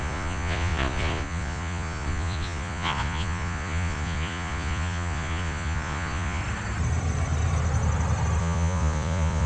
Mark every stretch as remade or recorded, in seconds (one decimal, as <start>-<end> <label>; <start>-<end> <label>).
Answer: 0.0-6.4 remade; 6.4-8.4 recorded; 8.4-9.5 remade